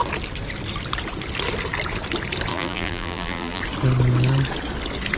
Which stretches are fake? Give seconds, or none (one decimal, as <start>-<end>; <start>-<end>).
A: 2.5-3.6